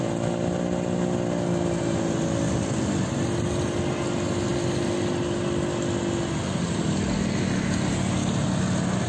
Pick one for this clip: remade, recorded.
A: recorded